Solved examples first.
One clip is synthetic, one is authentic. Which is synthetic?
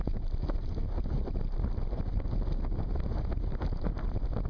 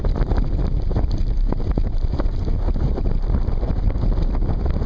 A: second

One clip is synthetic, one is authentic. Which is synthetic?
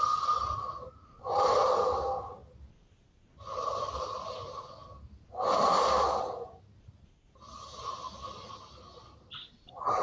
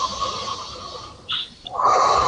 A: second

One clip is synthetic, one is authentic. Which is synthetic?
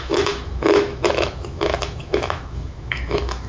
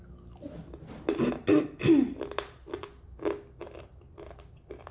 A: first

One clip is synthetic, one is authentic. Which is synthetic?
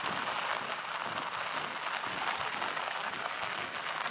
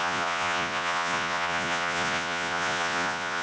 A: second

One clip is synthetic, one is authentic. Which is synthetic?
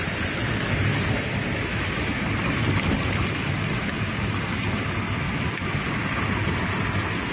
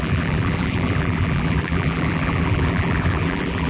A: second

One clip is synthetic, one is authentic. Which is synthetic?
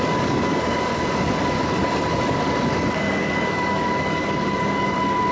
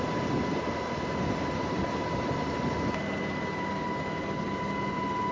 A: first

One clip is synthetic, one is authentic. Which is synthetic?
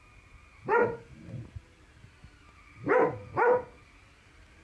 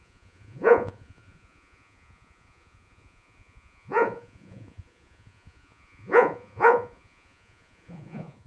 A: second